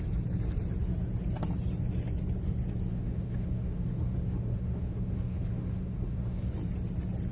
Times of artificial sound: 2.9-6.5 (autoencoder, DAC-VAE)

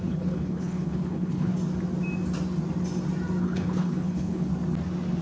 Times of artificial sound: 0.0-1.5 (codec, HILCodec); 3.4-4.5

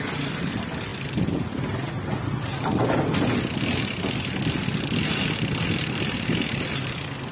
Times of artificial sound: none